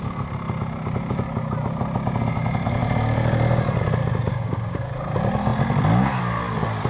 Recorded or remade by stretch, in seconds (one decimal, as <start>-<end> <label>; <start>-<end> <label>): 0.0-4.3 recorded; 4.3-4.9 remade; 4.9-6.9 recorded